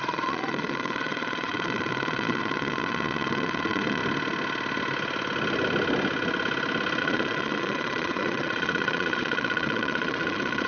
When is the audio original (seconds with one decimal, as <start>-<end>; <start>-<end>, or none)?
4.0-7.0